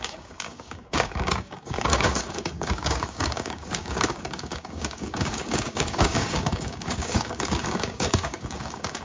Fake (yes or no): yes